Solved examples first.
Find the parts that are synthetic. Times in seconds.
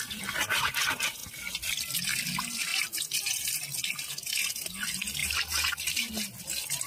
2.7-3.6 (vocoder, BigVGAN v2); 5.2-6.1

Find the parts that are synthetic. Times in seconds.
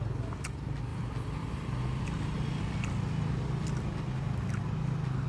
0.9-2.6 (vocoder, BigVGAN v2)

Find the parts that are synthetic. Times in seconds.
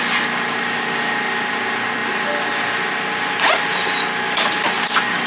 none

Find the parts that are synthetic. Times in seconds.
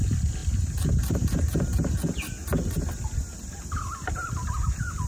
2.4-5.1 (vocoder, BigVGAN v2)